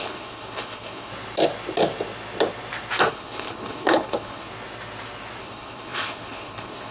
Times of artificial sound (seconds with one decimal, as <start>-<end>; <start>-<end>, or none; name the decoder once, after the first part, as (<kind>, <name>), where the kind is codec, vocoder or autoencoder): 0.0-1.1 (codec, HILCodec); 3.1-4.5; 5.4-6.9